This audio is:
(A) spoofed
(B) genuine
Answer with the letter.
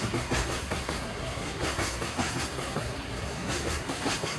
A